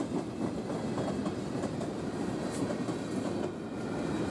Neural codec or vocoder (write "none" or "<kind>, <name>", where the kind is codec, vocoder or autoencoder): none